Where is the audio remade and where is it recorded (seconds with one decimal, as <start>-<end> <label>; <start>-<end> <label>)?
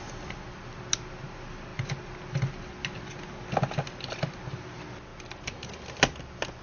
0.0-6.6 recorded